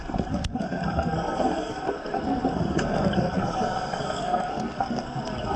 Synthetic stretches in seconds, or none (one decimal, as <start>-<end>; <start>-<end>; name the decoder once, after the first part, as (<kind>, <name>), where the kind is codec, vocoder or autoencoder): 0.0-5.6 (codec, SNAC)